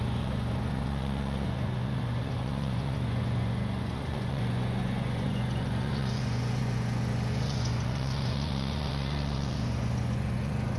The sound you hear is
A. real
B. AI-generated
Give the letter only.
B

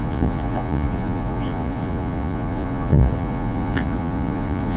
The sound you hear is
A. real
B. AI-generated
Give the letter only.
B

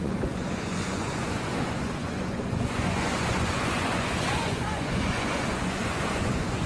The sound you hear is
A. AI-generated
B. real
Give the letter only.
A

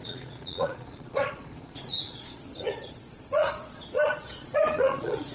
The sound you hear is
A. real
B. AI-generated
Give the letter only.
B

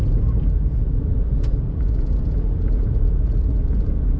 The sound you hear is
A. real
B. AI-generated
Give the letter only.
B